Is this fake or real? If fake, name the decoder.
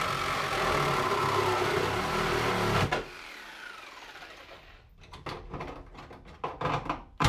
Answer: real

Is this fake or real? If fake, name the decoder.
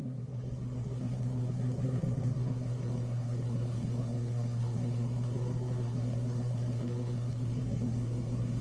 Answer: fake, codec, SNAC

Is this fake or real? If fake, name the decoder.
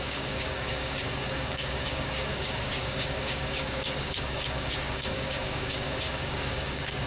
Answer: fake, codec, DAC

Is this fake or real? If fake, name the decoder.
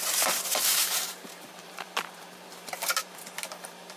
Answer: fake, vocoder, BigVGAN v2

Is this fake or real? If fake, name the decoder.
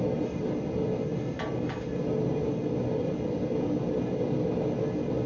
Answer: real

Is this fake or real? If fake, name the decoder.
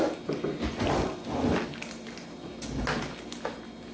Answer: real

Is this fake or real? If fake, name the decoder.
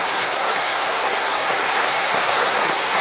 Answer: fake, codec, SNAC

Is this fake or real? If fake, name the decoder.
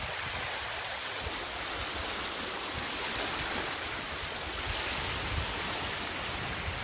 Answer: fake, vocoder, BigVGAN v2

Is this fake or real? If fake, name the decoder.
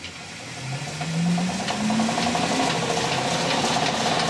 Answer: real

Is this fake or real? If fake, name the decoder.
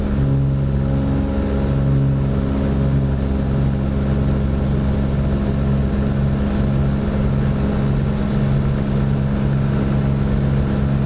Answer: real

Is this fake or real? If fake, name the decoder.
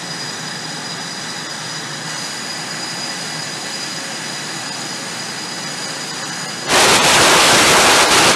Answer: real